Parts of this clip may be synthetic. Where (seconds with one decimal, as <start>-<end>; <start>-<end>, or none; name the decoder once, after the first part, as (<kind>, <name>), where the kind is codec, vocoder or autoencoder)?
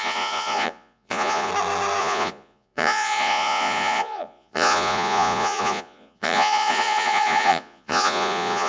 0.0-1.5 (vocoder, Vocos); 2.0-8.7